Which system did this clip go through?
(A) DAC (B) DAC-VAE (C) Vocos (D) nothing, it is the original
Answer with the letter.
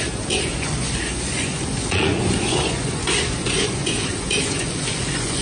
C